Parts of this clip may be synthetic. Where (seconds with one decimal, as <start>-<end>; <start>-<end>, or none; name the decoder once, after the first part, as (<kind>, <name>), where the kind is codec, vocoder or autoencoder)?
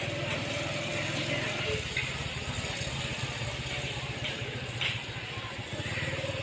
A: none